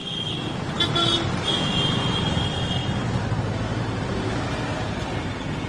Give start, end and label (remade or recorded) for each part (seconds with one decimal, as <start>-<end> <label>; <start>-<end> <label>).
0.0-4.7 recorded; 4.7-5.2 remade; 5.2-5.7 recorded